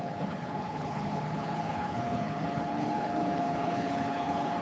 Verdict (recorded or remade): remade